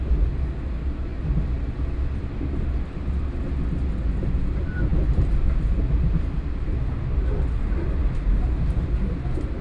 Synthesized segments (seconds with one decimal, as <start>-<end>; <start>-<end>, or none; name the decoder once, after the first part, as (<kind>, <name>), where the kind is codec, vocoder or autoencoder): none